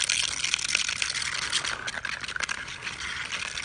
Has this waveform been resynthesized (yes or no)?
no